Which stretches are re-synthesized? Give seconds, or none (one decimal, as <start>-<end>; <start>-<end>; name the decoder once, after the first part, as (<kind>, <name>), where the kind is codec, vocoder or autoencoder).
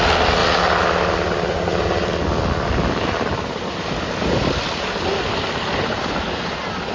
none